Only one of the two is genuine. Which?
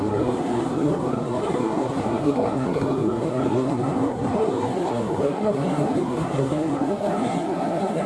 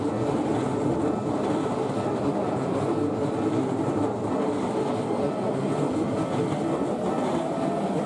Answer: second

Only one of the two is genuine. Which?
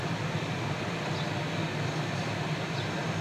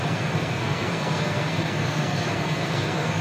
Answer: first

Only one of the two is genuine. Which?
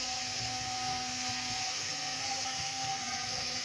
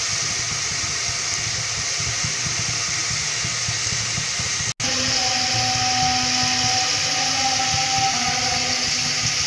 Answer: second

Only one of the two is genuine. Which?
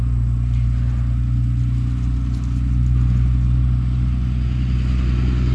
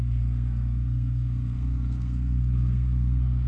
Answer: first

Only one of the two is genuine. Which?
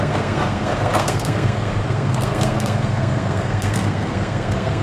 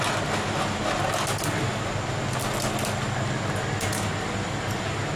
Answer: second